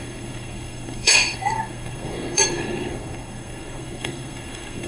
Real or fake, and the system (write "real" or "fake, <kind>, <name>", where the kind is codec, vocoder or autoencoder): fake, codec, SNAC